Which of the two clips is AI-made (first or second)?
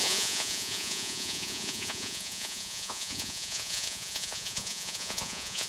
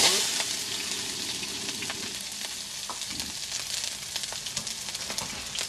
first